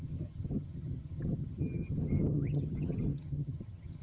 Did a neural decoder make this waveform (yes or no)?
yes